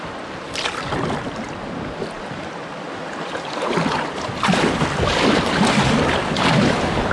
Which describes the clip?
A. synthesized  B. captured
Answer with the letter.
B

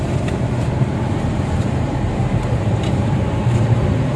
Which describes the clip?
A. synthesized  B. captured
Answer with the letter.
A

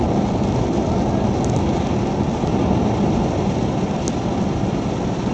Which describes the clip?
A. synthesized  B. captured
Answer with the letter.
B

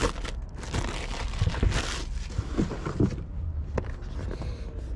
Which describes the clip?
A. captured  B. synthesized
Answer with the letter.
A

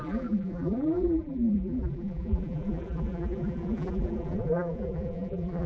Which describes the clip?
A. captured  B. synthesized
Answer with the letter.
B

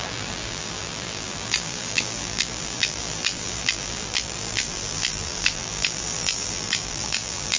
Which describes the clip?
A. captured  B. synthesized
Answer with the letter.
B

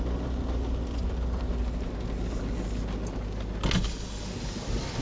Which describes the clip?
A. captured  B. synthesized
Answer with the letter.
A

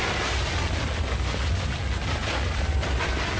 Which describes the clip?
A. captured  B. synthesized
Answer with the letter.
A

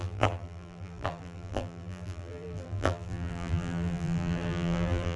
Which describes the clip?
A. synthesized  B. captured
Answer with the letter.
A